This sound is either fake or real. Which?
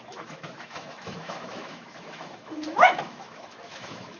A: fake